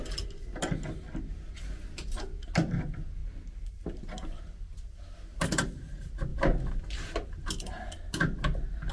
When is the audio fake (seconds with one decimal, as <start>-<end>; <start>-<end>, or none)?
3.2-4.4; 6.3-6.8